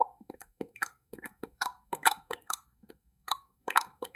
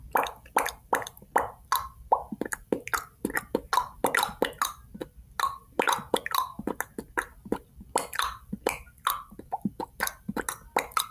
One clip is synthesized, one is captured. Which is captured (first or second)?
second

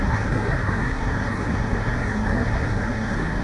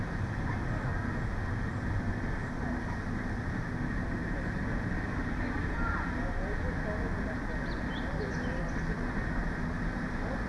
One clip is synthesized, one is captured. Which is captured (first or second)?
second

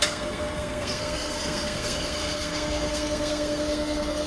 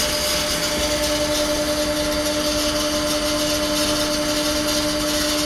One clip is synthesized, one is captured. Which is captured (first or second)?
second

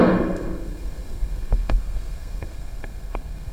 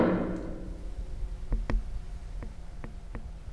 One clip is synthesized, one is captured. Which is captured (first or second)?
second